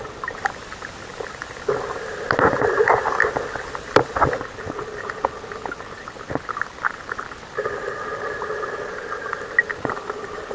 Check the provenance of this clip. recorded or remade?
recorded